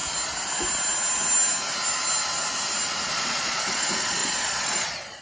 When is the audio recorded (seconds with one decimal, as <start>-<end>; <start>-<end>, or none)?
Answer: 0.0-3.1